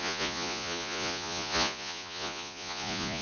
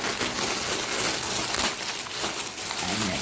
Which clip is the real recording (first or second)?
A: second